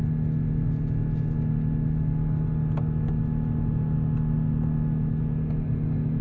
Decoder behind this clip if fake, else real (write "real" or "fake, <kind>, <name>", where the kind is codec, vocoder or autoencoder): real